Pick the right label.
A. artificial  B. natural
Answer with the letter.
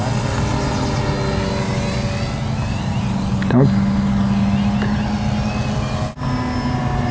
B